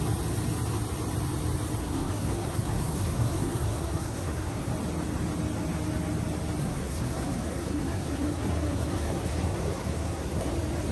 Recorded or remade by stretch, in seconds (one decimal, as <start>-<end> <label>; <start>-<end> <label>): 0.0-1.8 recorded; 1.8-4.7 remade; 4.7-6.6 recorded; 6.6-10.5 remade; 10.5-10.9 recorded